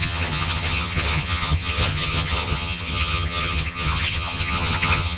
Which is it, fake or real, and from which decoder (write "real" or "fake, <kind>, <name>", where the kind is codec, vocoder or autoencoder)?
fake, vocoder, HiFi-GAN